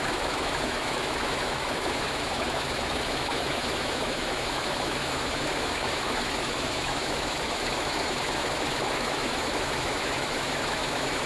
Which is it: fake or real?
fake